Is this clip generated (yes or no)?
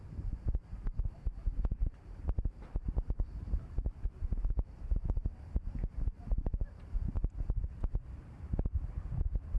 yes